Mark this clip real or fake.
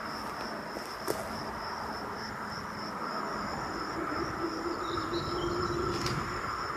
fake